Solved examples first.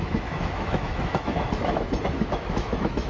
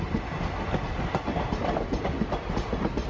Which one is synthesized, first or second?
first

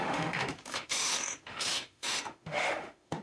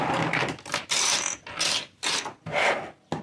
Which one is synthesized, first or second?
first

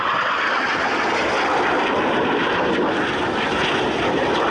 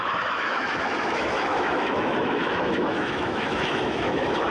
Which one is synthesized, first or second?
second